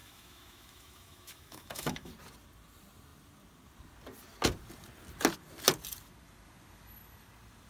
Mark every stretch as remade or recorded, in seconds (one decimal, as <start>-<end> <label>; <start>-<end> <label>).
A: 0.0-2.1 remade; 2.1-7.7 recorded